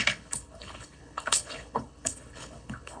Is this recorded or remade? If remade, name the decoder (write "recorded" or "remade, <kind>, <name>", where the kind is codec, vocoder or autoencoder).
remade, codec, HILCodec